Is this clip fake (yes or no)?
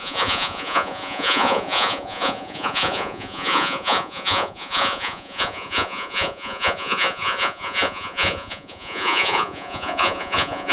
yes